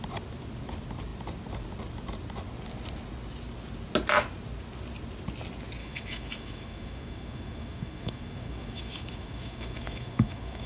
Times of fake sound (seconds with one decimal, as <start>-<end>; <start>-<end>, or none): 5.8-10.7